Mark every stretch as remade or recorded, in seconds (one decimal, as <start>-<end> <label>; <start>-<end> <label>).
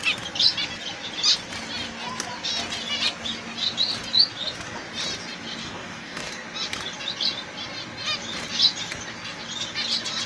0.0-5.6 recorded; 5.6-6.3 remade; 6.3-10.3 recorded